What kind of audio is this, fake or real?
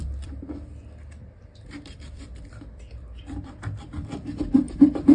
fake